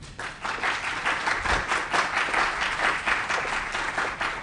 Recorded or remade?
recorded